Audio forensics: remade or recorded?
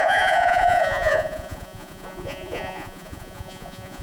remade